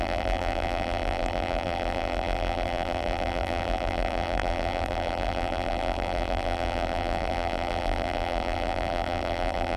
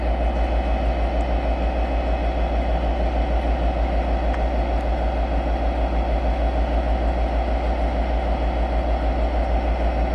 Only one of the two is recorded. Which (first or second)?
second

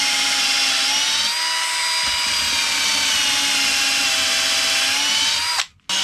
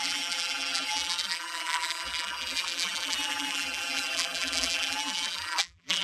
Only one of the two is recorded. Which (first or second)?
first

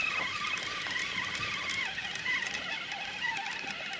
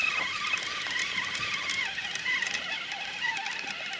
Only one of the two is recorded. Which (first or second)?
second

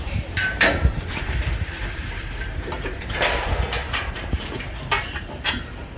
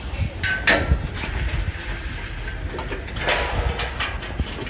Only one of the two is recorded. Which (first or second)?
second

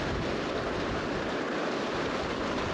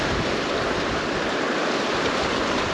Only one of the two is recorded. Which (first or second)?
first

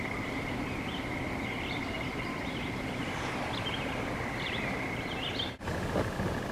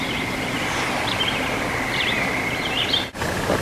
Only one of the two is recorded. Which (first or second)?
second